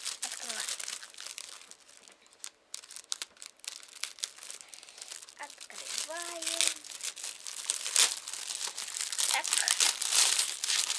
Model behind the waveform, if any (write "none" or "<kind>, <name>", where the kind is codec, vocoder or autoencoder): none